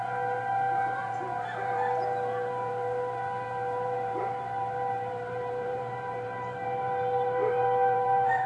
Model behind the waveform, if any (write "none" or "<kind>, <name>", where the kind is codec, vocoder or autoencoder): vocoder, BigVGAN v2